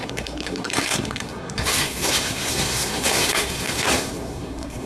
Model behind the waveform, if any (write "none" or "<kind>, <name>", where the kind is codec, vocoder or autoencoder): codec, SNAC